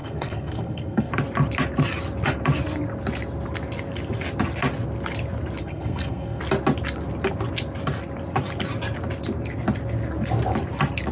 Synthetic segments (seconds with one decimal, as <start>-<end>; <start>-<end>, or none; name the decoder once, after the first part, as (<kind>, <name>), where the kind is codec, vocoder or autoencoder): 0.0-1.1 (codec, SNAC); 5.6-6.4

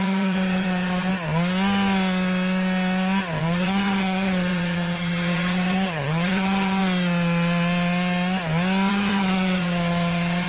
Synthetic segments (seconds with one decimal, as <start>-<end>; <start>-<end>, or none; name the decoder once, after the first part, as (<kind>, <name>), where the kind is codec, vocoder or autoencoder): 0.0-1.1 (vocoder, HiFi-GAN); 3.4-6.8; 8.9-10.5

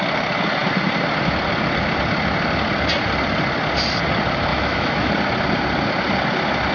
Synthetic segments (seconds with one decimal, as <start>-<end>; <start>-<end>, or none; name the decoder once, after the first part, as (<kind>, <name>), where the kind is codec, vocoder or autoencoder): 4.5-5.1 (autoencoder, DAC-VAE)

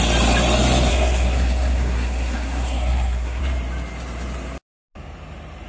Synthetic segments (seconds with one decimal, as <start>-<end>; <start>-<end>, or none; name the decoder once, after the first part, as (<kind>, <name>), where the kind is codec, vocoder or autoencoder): 0.9-3.4 (codec, SNAC)